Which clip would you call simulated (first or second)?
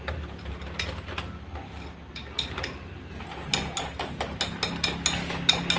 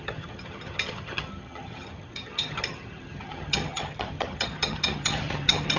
second